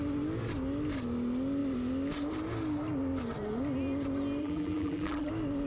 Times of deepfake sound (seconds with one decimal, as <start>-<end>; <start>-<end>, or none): 4.4-5.3